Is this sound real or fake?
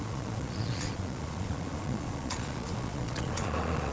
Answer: fake